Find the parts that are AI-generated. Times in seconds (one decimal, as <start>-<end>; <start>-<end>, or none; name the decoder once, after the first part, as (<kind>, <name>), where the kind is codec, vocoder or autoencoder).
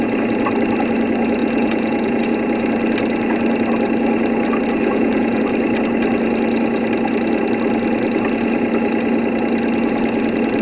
1.4-2.2 (vocoder, Vocos); 4.8-5.4